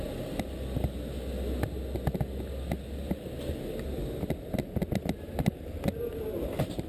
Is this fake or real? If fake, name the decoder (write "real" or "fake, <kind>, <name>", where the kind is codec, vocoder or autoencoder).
real